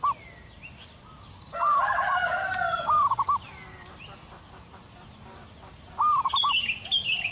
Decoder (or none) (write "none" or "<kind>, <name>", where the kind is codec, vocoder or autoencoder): none